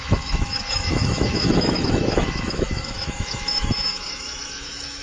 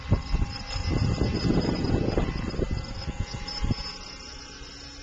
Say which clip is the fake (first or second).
first